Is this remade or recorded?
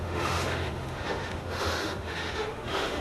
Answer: remade